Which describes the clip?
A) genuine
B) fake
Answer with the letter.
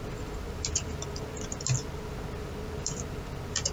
A